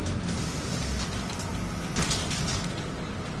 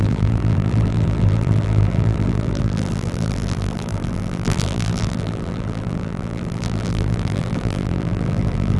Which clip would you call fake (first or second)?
second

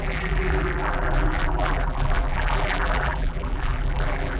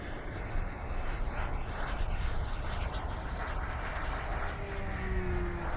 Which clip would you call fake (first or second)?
first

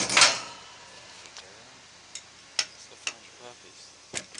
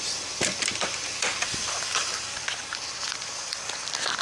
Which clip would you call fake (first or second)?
second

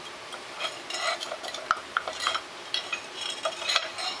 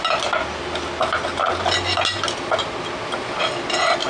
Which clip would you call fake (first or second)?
first